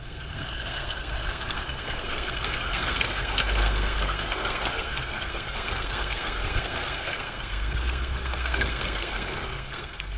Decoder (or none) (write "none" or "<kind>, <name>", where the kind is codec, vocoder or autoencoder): codec, SNAC